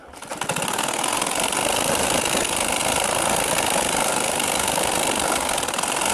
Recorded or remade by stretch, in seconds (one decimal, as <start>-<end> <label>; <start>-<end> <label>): 0.0-6.1 recorded